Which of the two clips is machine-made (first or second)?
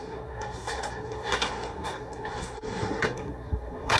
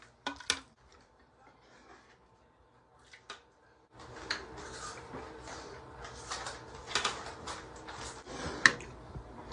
first